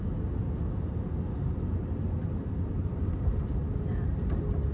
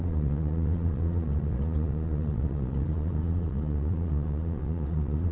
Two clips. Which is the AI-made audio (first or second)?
second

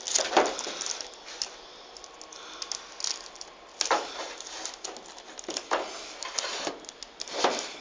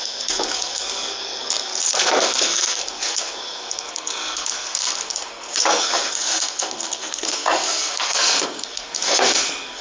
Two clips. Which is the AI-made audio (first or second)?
second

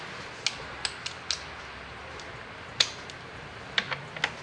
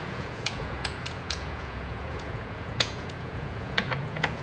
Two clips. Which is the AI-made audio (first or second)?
second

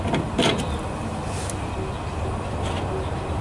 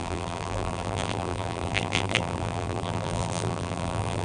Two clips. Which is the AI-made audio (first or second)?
second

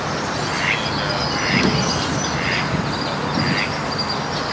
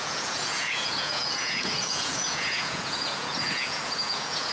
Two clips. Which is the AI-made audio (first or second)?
second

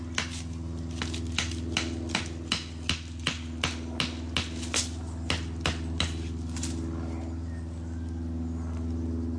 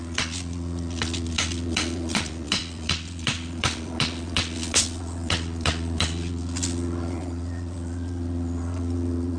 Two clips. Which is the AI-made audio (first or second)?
second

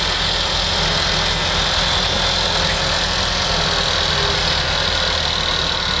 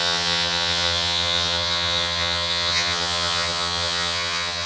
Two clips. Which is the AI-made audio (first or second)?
second